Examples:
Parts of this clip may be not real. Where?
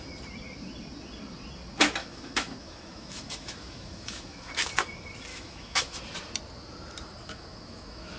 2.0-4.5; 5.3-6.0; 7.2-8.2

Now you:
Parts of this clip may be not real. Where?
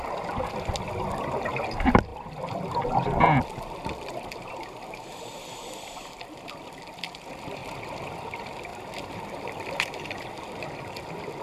2.1-2.8; 7.6-8.2; 8.7-10.3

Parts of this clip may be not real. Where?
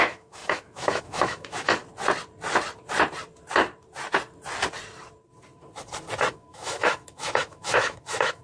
0.0-1.8; 6.3-8.4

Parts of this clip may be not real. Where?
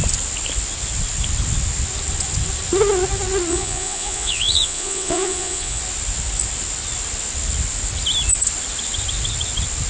3.5-5.8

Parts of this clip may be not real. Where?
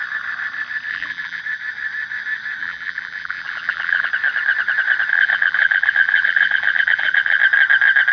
0.9-1.4; 2.6-4.1; 5.1-7.4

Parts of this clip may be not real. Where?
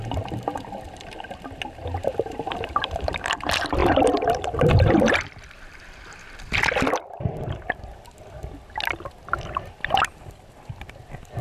2.0-3.3; 3.8-7.5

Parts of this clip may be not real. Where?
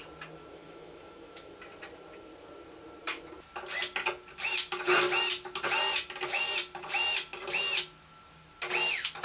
0.4-1.5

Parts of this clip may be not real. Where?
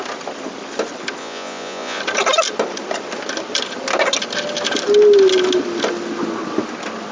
1.2-2.0